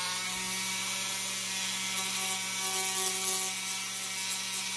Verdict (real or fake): real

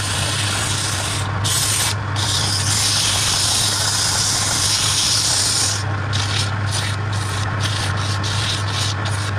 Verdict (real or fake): real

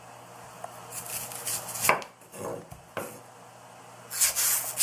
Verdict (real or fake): real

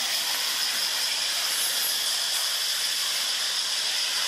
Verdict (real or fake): real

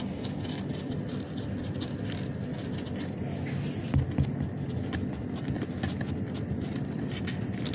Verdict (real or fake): real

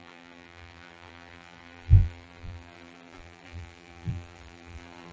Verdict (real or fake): fake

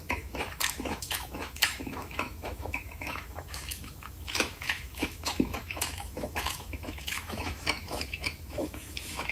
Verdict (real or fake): fake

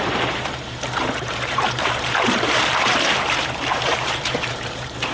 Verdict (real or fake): fake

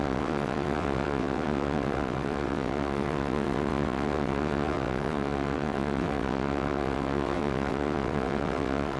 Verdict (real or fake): fake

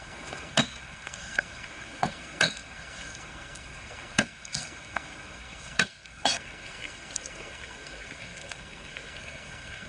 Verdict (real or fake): fake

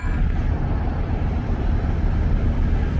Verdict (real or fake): real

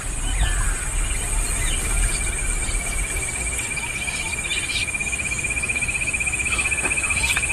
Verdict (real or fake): real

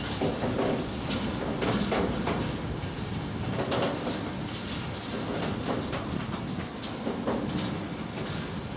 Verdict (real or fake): real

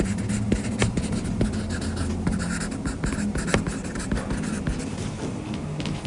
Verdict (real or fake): real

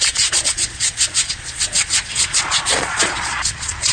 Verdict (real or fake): fake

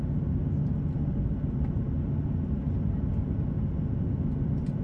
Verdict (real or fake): real